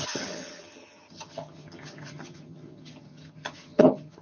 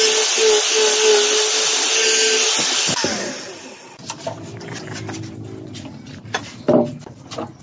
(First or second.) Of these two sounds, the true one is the second